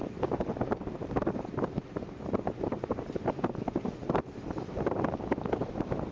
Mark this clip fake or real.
fake